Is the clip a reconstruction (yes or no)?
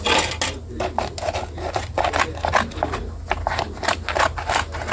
no